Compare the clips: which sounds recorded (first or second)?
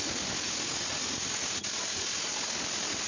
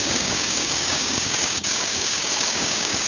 first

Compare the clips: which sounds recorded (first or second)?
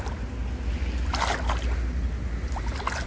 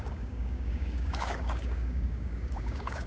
first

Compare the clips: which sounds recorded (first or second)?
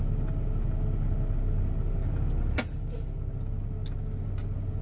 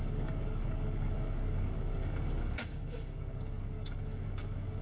first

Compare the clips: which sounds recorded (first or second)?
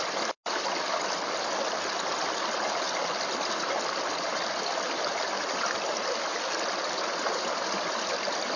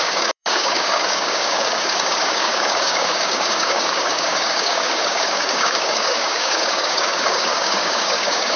first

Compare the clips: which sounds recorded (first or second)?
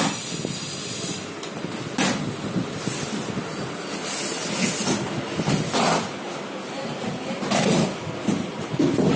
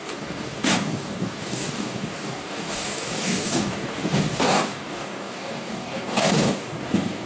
first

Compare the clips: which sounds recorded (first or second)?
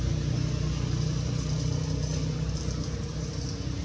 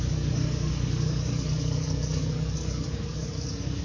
first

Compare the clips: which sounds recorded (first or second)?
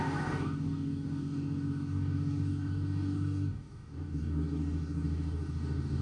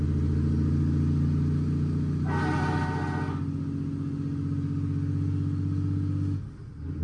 second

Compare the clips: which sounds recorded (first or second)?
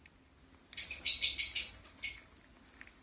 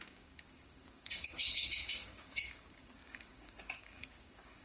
first